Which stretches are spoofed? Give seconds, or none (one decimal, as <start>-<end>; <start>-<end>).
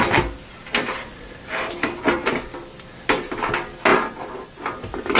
0.9-2.3; 3.9-4.8